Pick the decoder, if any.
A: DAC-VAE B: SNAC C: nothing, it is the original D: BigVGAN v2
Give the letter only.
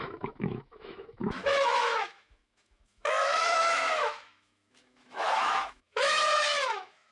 A